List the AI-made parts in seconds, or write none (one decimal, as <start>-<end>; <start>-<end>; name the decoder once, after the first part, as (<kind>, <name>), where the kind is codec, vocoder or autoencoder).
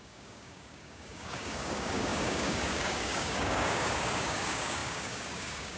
0.0-5.8 (codec, DAC)